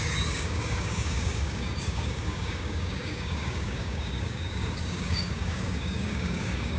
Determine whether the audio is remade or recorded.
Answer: remade